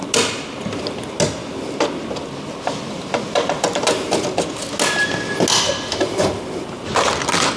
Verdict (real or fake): real